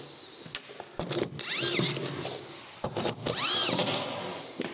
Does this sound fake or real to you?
real